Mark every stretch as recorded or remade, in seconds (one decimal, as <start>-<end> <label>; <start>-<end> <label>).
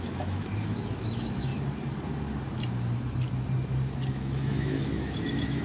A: 0.0-1.5 remade; 1.5-4.1 recorded; 4.1-5.6 remade